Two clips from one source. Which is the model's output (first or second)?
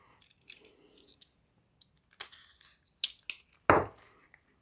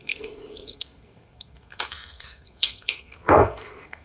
second